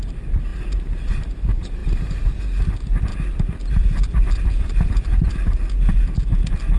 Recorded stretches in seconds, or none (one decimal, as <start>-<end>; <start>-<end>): 0.0-6.8